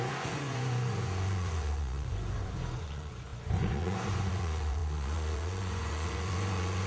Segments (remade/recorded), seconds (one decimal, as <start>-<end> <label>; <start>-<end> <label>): 0.0-6.9 remade